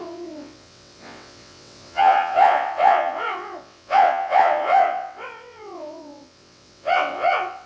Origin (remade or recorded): remade